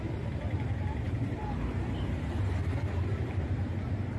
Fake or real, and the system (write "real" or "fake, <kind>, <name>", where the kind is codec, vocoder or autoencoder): fake, vocoder, BigVGAN v2